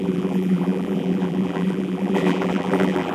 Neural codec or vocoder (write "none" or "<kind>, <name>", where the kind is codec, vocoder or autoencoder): vocoder, BigVGAN v2